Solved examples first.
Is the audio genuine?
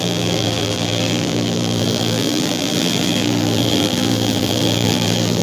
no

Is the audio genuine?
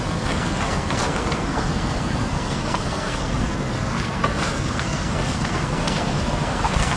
no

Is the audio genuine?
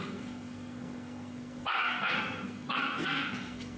no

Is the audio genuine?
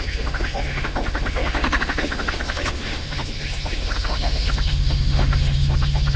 no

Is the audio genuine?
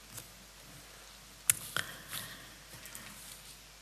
yes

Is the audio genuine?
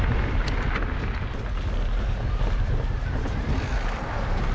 yes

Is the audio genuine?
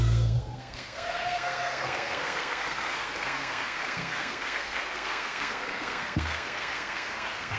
no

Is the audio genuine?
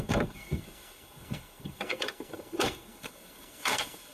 no